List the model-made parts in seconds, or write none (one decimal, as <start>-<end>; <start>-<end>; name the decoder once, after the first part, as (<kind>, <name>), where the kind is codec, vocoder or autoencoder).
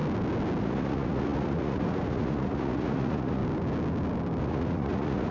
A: 0.6-3.4 (vocoder, Vocos); 4.4-5.3